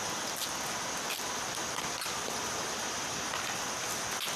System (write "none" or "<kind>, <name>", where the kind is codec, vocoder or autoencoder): none